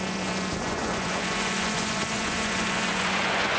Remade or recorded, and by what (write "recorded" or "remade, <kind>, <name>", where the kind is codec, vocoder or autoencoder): remade, vocoder, Vocos